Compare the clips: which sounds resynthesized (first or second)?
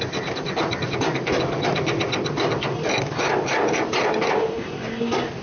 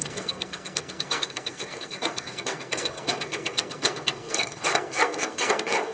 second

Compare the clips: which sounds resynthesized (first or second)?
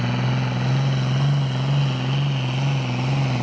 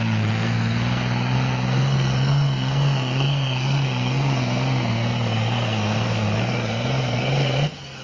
second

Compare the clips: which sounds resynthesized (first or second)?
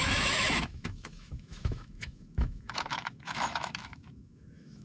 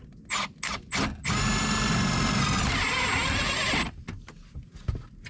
first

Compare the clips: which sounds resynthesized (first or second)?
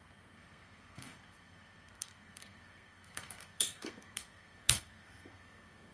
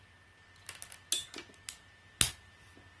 first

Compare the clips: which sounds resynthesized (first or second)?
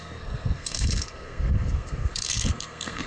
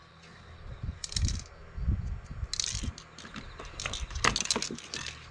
first